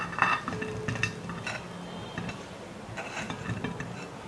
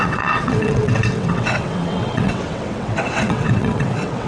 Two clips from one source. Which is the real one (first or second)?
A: first